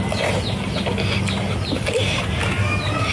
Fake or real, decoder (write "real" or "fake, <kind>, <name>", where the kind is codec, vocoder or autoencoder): real